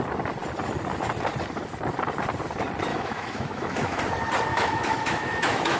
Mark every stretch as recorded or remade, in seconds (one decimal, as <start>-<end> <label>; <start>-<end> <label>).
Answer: 0.0-2.9 recorded; 2.9-4.0 remade; 4.0-4.5 recorded; 4.5-5.8 remade